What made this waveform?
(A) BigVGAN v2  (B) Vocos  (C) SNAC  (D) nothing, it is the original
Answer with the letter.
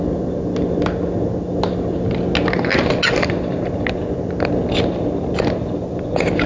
D